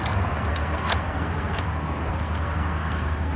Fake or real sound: fake